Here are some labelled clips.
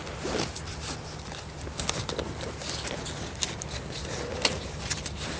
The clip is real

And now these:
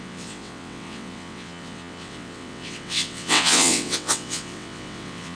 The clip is fake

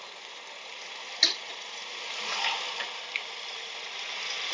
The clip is real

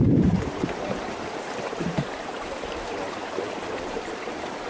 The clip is fake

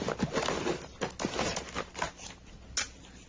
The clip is real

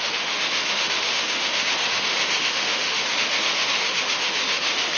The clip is fake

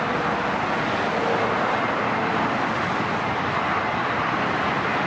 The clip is real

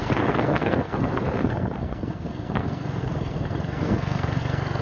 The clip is fake